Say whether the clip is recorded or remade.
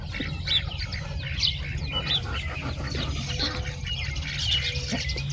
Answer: recorded